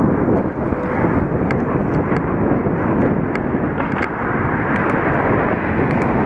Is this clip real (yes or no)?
no